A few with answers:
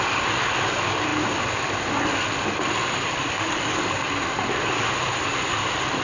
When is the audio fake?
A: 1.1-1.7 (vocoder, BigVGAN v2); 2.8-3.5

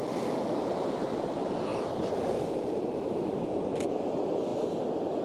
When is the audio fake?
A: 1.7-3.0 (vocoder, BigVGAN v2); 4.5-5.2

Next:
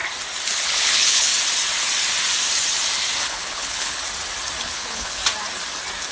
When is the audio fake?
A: 0.5-1.3 (codec, HILCodec); 3.2-4.0; 4.6-5.2